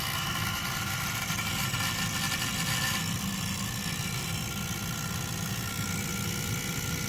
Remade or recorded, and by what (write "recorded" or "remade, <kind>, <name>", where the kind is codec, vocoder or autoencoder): recorded